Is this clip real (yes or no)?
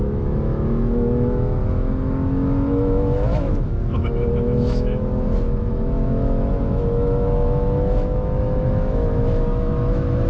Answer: no